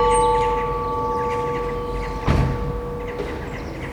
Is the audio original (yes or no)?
yes